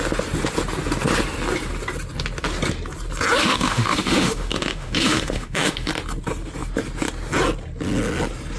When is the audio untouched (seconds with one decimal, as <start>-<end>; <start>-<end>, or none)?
0.0-3.4; 5.9-8.6

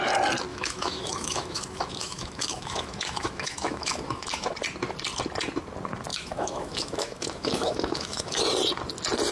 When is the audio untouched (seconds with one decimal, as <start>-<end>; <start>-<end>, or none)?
0.0-0.5; 4.5-6.1; 8.4-9.3

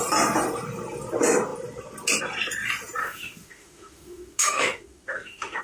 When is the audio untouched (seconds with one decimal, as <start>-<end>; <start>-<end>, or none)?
0.0-3.0

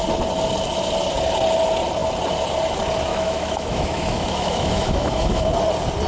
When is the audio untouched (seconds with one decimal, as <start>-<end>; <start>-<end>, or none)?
0.0-3.1; 5.5-6.1